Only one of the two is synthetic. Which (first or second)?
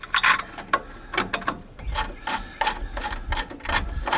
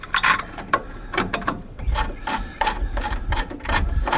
second